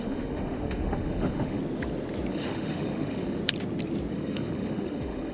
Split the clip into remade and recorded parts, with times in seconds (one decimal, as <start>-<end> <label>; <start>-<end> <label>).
0.0-1.6 remade; 1.6-2.3 recorded; 2.3-3.4 remade; 3.4-4.1 recorded; 4.1-5.3 remade